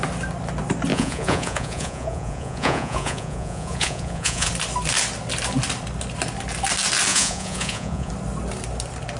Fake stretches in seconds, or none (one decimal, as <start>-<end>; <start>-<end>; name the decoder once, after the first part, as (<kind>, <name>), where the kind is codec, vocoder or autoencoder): 0.9-4.5 (vocoder, Vocos); 7.1-8.1